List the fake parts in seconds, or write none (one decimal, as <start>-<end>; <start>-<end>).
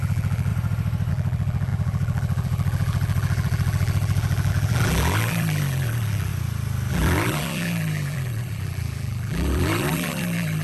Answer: 0.0-0.5; 1.1-6.3; 6.9-10.6